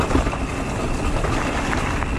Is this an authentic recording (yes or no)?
yes